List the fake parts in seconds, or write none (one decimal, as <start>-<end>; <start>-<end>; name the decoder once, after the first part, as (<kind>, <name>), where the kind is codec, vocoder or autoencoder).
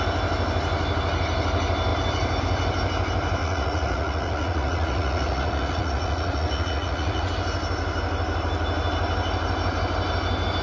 3.4-7.3 (vocoder, Vocos)